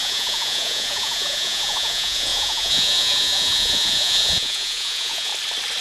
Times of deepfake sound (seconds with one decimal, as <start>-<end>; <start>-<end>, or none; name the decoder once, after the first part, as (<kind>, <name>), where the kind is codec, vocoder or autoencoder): 0.0-5.3 (vocoder, Vocos)